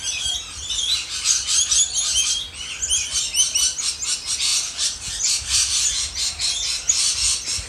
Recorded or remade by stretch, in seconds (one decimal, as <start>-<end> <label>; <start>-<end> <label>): 0.0-4.5 recorded; 4.5-5.9 remade; 5.9-7.7 recorded